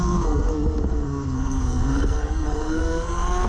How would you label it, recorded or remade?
remade